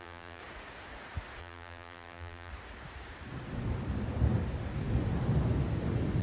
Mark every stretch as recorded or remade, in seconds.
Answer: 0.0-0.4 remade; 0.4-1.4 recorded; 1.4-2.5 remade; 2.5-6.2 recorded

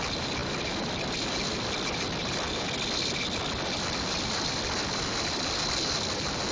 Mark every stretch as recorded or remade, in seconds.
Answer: 0.0-6.5 recorded

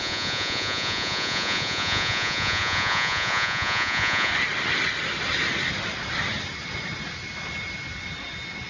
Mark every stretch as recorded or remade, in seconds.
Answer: 0.0-4.3 remade; 4.3-8.7 recorded